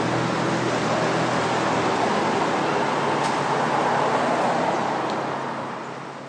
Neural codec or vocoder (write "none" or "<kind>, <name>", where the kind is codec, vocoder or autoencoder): none